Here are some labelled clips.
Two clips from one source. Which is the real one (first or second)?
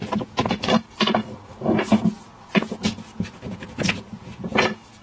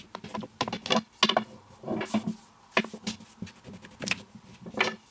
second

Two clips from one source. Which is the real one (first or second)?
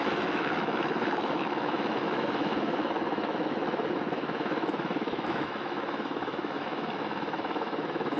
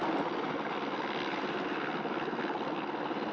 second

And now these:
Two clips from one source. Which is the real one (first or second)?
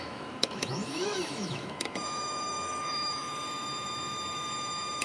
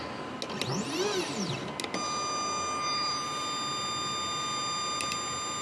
second